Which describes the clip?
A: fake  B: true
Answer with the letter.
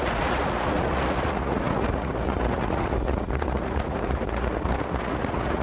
A